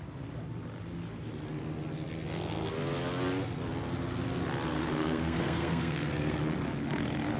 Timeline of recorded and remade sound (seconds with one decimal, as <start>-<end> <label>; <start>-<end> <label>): 0.0-4.7 recorded; 4.7-6.4 remade; 6.4-7.4 recorded

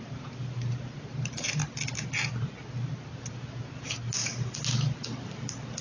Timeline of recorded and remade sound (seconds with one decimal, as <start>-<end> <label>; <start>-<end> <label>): 0.0-1.6 remade; 1.6-2.9 recorded; 2.9-4.2 remade; 4.2-5.8 recorded